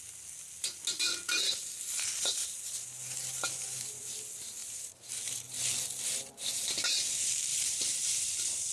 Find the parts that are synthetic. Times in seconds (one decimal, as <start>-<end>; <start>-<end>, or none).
7.5-8.7